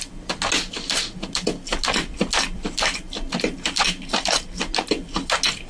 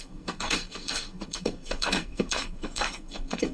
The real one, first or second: first